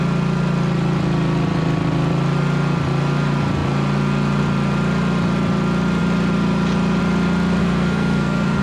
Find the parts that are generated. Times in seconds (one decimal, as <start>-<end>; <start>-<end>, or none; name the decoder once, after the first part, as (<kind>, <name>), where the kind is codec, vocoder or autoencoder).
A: 7.6-8.6 (codec, SNAC)